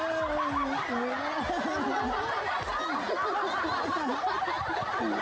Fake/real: real